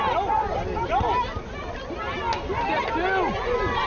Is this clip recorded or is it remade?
recorded